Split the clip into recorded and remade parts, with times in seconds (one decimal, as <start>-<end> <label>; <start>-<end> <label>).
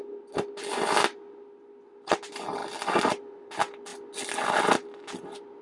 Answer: 0.0-5.6 recorded